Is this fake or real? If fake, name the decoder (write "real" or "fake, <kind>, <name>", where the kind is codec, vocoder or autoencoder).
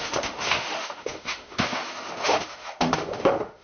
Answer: fake, autoencoder, DAC-VAE